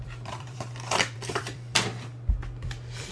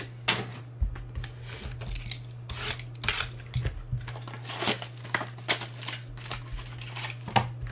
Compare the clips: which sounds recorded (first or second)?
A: second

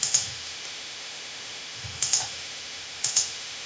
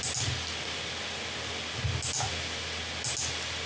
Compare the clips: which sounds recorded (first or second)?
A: second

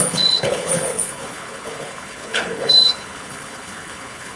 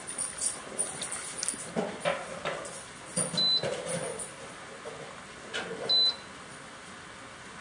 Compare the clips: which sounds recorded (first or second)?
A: second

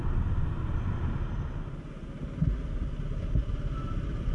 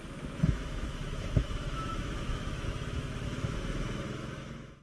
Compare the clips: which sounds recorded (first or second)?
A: first